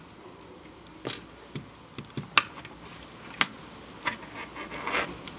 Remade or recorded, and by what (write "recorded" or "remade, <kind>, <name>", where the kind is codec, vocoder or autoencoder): recorded